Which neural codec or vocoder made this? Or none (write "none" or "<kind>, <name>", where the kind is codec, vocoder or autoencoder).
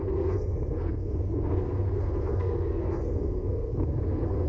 codec, SNAC